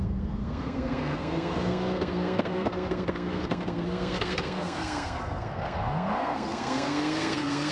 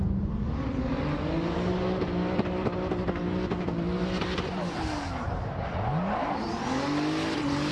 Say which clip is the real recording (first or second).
second